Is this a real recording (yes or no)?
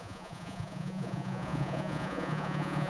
no